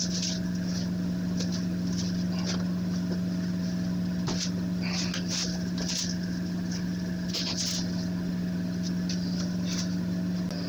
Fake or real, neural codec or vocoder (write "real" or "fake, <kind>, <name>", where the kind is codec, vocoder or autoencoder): real